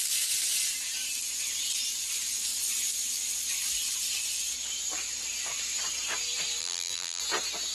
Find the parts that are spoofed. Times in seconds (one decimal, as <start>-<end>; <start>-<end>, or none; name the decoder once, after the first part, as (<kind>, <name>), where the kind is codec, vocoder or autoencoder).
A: 6.6-7.2 (vocoder, BigVGAN v2)